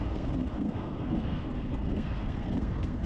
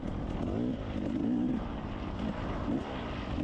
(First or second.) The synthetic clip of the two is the first